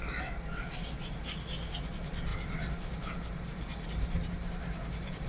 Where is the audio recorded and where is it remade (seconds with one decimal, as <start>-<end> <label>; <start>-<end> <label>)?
0.0-2.3 recorded; 2.3-5.3 remade